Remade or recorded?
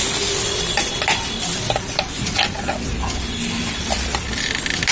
recorded